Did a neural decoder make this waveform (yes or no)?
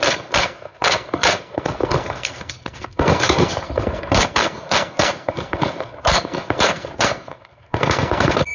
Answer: yes